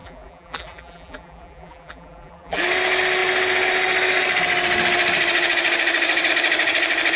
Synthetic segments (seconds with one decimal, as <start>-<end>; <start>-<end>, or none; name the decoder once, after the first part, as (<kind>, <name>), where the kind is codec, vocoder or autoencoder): 0.0-2.6 (vocoder, BigVGAN v2)